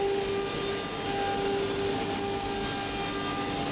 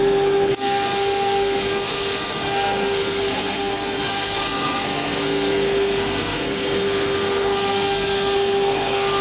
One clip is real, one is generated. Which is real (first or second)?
first